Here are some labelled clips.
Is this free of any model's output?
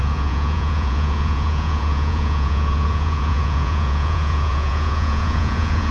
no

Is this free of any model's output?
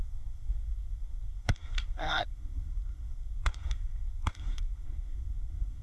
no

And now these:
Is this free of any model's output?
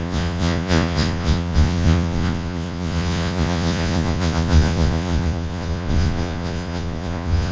no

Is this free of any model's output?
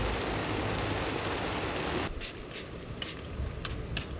yes